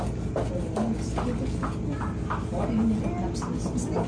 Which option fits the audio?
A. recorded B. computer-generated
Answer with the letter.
A